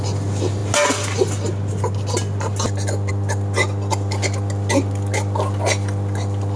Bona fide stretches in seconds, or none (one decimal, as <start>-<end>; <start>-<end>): 0.0-6.6